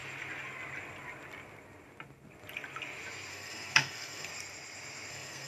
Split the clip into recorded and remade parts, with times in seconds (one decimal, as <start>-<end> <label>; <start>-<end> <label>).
0.0-3.3 recorded; 3.3-4.3 remade; 4.3-5.1 recorded; 5.1-5.5 remade